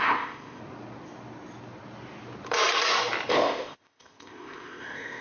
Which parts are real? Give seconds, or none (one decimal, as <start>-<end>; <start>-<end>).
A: 0.6-3.3